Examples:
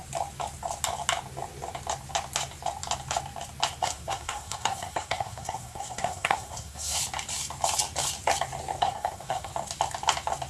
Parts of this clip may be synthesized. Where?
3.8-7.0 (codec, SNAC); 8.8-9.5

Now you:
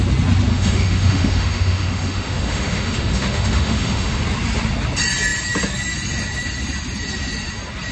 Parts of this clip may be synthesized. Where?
0.5-4.2 (autoencoder, DAC-VAE)

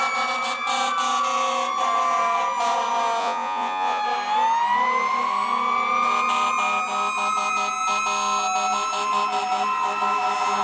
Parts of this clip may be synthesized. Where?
3.2-4.0 (vocoder, Vocos)